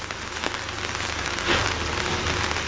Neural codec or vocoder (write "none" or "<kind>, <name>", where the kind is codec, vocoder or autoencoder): none